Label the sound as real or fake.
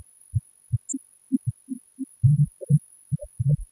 real